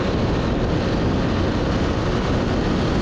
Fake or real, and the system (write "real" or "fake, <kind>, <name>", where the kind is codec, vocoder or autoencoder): real